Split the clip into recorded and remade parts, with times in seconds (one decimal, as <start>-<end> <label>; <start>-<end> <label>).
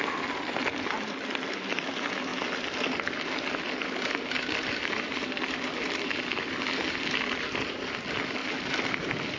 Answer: 0.0-9.4 recorded